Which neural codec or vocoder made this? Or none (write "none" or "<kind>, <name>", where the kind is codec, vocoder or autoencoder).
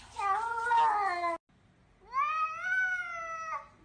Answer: none